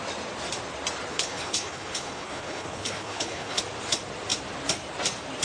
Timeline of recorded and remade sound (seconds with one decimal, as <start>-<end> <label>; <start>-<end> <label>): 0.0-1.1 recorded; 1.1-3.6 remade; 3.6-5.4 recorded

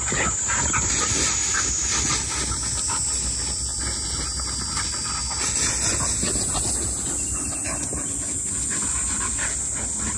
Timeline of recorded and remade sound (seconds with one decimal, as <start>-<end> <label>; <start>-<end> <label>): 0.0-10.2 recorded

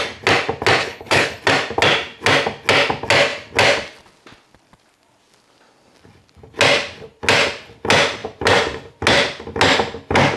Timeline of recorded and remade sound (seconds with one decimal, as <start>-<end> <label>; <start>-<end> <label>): 0.0-0.8 recorded; 0.8-1.4 remade; 1.4-10.4 recorded

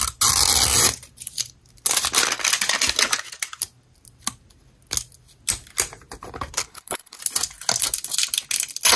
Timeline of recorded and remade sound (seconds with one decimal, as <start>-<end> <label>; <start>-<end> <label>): 0.0-6.6 recorded; 6.6-7.2 remade; 7.2-9.0 recorded

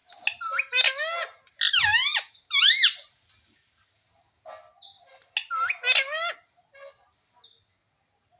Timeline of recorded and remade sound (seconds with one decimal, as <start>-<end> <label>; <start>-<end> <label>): 0.0-8.4 recorded

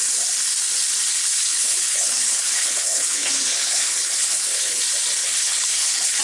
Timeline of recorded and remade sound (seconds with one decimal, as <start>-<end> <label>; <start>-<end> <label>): 0.0-1.1 recorded; 1.1-4.8 remade; 4.8-5.2 recorded; 5.2-6.2 remade

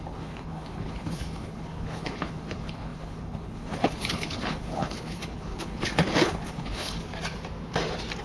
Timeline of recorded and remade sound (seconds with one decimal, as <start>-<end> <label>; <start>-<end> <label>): 0.0-7.0 remade; 7.0-8.2 recorded

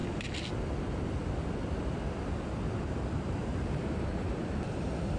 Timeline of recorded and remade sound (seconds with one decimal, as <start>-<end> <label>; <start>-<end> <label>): 0.0-5.2 recorded